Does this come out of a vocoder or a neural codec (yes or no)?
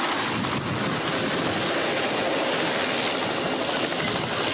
no